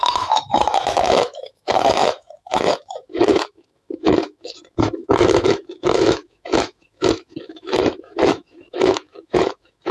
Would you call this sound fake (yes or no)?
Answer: yes